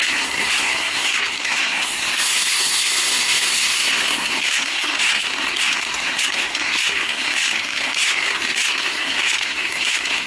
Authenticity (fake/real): fake